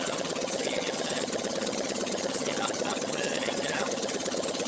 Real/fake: fake